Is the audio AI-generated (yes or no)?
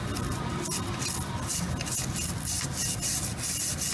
no